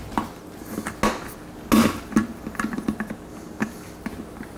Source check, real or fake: real